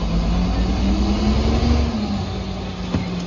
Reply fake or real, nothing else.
real